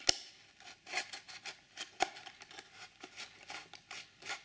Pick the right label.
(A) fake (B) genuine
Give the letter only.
B